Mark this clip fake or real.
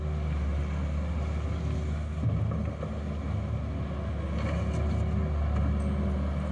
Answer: real